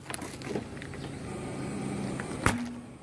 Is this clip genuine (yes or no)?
yes